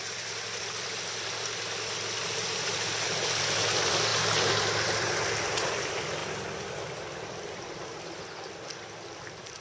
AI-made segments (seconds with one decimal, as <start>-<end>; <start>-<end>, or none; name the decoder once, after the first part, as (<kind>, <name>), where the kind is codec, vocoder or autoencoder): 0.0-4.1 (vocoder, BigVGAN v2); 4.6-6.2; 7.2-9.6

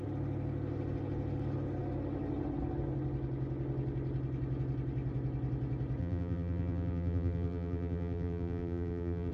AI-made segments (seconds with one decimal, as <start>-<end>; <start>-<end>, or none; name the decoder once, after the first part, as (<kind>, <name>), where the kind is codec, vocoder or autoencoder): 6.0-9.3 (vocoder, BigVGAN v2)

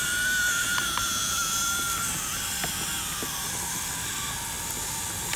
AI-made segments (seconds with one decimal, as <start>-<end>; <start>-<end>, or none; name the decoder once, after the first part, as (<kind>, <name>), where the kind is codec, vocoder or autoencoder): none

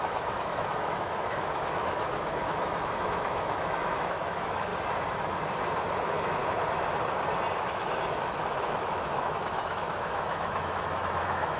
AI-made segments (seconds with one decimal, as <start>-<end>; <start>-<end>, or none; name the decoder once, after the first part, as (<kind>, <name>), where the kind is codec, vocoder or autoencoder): 0.0-4.7 (autoencoder, DAC-VAE); 6.0-6.4; 7.6-11.6

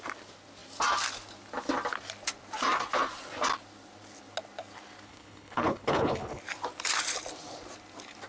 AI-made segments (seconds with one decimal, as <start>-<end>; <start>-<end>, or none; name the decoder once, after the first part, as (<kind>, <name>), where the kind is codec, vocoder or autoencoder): 5.1-6.4 (codec, HILCodec)

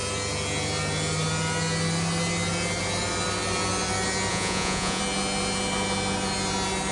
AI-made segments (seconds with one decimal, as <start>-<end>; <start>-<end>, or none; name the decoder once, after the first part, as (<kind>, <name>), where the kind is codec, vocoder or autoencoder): 4.3-5.0 (vocoder, Vocos)

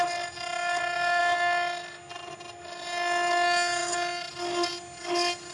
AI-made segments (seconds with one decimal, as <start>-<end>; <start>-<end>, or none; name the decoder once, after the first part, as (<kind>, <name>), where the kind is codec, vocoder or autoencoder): none